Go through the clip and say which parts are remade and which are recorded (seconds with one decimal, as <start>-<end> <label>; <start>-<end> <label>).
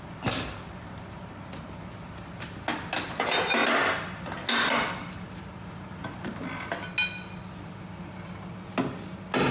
0.0-9.5 recorded